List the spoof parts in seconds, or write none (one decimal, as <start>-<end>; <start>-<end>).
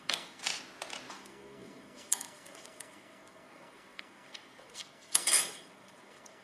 0.0-0.4; 1.1-6.4